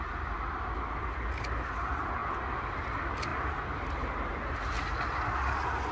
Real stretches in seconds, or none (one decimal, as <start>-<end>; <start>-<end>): 0.0-5.9